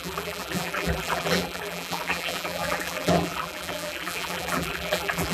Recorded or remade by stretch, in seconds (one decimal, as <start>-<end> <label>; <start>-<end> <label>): 0.0-5.3 remade